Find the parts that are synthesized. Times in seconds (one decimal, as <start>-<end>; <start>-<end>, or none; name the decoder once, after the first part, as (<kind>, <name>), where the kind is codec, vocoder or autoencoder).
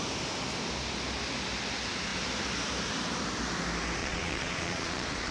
4.0-5.3 (vocoder, Vocos)